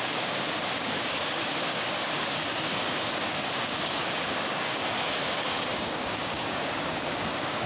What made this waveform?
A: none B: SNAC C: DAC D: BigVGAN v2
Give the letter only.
C